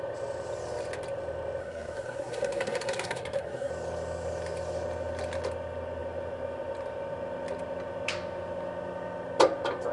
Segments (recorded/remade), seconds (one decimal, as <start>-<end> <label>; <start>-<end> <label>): 0.0-1.6 recorded; 1.6-3.7 remade; 3.7-9.9 recorded